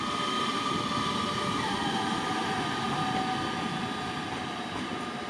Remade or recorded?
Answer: recorded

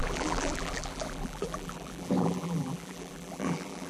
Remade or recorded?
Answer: remade